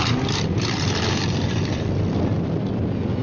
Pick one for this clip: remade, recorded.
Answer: recorded